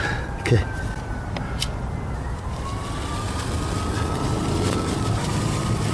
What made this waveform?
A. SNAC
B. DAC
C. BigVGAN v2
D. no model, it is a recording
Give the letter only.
C